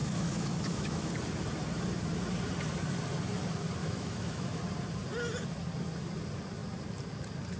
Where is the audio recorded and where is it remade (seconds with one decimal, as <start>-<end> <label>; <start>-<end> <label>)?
0.0-1.1 remade; 1.1-3.8 recorded; 3.8-4.6 remade; 4.6-7.6 recorded